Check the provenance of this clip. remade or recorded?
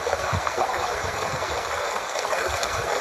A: remade